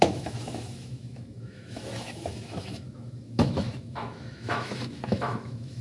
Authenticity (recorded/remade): remade